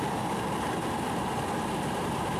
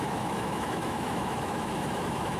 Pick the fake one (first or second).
second